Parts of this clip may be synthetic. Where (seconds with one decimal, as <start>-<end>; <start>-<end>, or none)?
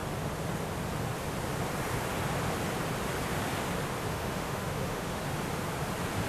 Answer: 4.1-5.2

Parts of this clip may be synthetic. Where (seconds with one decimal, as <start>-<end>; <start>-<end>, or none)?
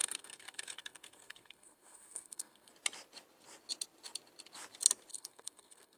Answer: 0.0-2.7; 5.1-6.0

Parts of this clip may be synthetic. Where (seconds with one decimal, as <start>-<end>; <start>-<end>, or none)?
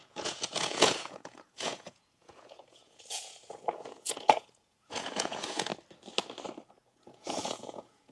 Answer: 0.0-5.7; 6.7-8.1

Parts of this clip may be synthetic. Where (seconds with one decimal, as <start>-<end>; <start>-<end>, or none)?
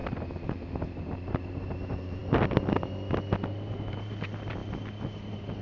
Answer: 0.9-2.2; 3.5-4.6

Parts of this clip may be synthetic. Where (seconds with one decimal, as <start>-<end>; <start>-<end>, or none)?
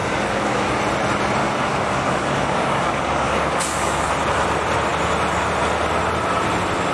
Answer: 0.0-0.8; 1.4-4.1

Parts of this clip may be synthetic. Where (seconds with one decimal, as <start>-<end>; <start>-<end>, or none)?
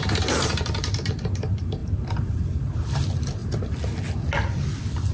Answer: 0.0-3.4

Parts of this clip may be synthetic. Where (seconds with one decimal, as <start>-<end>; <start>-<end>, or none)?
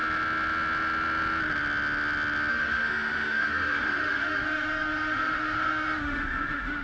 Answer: 2.5-6.8